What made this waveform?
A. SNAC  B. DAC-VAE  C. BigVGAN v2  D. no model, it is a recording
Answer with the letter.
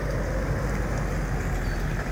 D